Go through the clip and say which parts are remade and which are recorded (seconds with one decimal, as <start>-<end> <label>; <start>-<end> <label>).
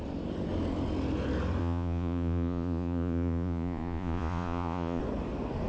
0.0-1.6 recorded; 1.6-5.0 remade; 5.0-5.7 recorded